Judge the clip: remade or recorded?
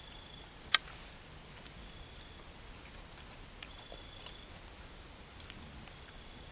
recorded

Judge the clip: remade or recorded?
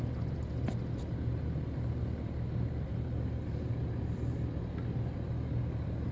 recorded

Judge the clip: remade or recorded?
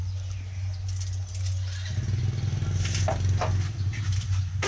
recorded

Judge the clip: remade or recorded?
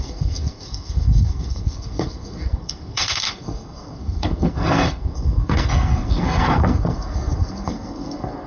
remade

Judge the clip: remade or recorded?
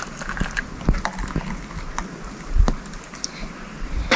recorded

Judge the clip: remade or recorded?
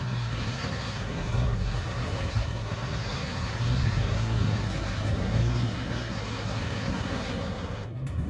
remade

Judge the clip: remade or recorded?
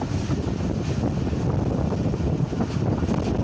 recorded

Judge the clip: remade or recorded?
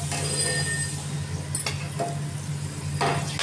recorded